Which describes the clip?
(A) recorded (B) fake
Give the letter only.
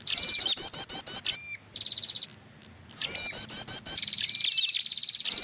A